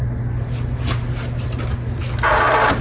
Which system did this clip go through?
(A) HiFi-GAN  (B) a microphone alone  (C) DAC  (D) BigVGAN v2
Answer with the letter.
B